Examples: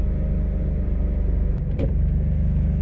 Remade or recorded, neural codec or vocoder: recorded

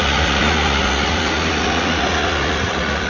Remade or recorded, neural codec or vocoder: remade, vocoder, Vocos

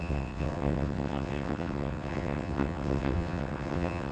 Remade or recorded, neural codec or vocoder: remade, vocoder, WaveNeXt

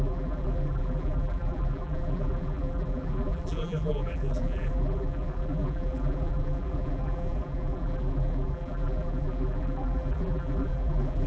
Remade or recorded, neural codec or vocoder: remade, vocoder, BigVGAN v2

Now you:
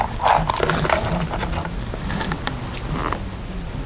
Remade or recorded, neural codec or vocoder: recorded